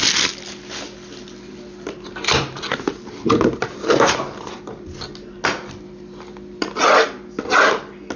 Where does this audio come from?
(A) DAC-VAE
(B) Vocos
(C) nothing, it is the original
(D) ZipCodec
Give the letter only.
C